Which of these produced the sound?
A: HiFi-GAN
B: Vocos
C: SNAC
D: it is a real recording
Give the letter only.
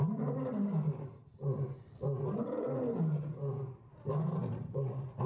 D